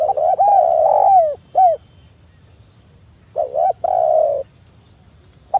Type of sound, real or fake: real